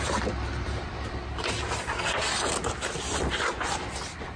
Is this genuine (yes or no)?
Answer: yes